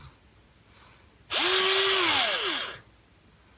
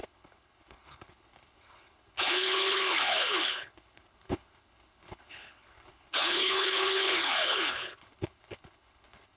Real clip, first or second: first